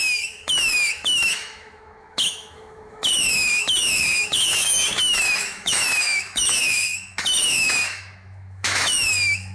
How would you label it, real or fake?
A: fake